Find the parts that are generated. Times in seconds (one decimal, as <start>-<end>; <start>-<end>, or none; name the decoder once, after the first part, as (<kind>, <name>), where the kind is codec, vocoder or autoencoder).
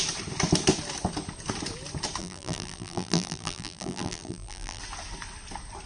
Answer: 2.2-4.8 (vocoder, BigVGAN v2)